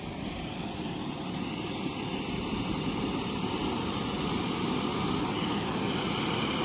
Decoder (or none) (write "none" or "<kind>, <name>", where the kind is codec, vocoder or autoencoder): none